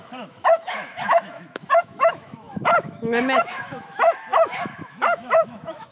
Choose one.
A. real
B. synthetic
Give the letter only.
B